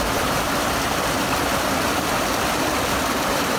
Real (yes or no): yes